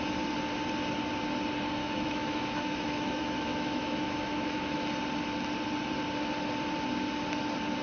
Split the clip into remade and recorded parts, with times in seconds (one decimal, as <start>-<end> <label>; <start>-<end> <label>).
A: 0.0-1.8 recorded; 1.8-4.8 remade; 4.8-7.8 recorded